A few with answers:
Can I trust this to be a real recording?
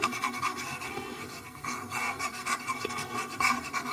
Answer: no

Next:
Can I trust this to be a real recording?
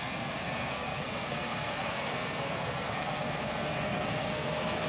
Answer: no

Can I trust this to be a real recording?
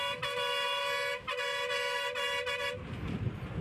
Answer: yes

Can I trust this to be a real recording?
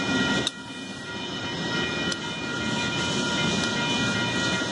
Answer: yes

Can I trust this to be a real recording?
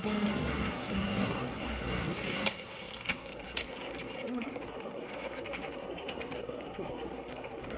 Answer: no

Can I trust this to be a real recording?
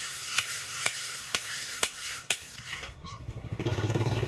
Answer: no